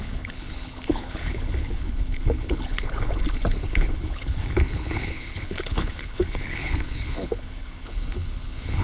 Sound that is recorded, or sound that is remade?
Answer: remade